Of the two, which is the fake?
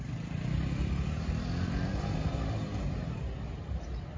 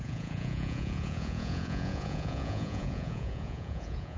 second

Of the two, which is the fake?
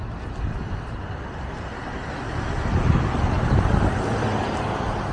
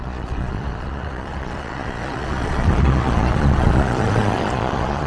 second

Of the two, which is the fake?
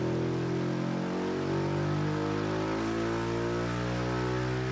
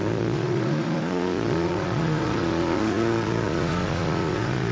second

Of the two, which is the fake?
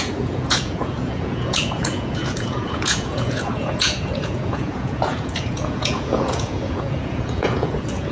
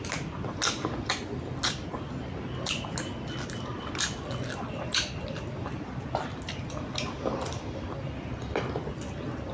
first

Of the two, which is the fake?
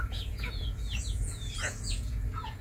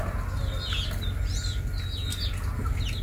first